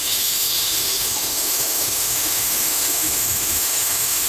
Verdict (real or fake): fake